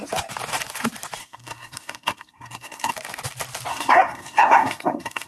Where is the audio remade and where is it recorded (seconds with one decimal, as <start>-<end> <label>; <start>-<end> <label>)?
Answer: 0.0-1.2 recorded; 1.2-2.9 remade; 2.9-3.7 recorded; 3.7-5.3 remade

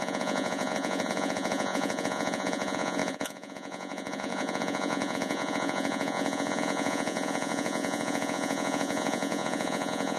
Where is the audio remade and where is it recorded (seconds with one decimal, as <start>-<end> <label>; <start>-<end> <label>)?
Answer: 0.0-10.2 remade

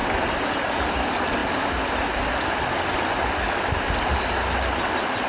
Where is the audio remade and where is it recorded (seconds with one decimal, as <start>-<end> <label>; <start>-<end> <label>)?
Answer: 0.0-0.8 recorded; 0.8-1.4 remade; 1.4-4.6 recorded; 4.6-5.3 remade

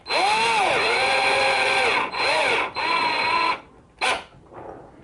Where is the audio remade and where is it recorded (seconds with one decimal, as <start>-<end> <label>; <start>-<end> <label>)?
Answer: 0.0-0.6 recorded; 0.6-3.6 remade; 3.6-5.0 recorded

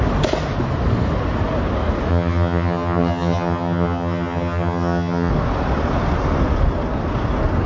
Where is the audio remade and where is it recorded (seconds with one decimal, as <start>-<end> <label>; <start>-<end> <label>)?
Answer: 0.0-2.1 recorded; 2.1-5.3 remade; 5.3-7.7 recorded

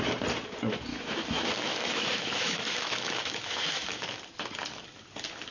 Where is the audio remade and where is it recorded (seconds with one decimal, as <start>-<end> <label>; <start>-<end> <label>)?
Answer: 0.0-0.9 recorded; 0.9-4.2 remade; 4.2-5.5 recorded

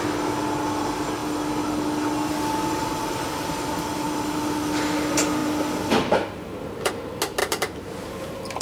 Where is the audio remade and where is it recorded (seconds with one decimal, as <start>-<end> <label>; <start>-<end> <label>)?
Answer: 0.0-7.4 recorded; 7.4-8.6 remade

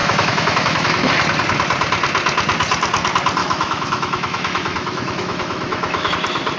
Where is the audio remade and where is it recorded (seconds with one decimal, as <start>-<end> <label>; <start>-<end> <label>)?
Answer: 0.0-1.1 remade; 1.1-3.4 recorded; 3.4-6.1 remade; 6.1-6.6 recorded